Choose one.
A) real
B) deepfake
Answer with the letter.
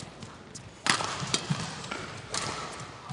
A